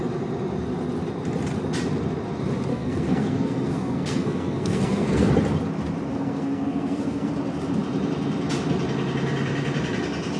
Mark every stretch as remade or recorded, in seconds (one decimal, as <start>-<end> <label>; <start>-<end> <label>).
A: 0.0-2.7 recorded; 2.7-5.3 remade; 5.3-6.1 recorded; 6.1-7.3 remade; 7.3-10.4 recorded

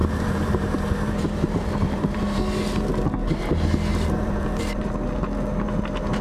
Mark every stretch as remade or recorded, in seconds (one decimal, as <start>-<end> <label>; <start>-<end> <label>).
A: 0.0-2.4 remade; 2.4-3.9 recorded; 3.9-4.9 remade; 4.9-6.2 recorded